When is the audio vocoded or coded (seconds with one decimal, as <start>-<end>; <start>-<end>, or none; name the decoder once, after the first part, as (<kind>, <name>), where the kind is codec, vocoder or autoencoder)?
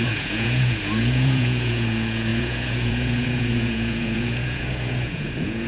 0.0-5.7 (vocoder, Vocos)